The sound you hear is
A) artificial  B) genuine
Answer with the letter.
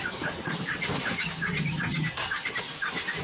A